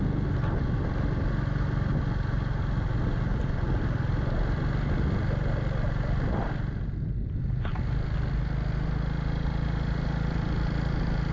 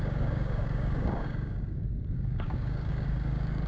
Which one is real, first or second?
first